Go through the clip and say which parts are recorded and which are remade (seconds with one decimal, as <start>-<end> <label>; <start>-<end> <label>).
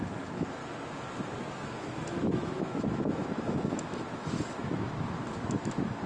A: 0.0-0.6 remade; 0.6-1.5 recorded; 1.5-6.1 remade